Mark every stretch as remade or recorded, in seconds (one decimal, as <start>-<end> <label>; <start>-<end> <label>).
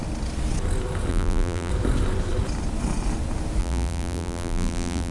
0.0-1.1 recorded; 1.1-1.7 remade; 1.7-3.6 recorded; 3.6-5.1 remade